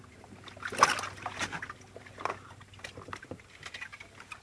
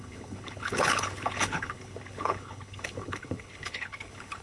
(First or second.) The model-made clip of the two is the second